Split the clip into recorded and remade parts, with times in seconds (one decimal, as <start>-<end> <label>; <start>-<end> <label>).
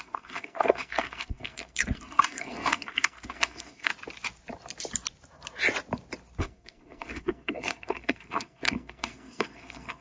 0.0-3.9 remade; 3.9-6.4 recorded; 6.4-10.0 remade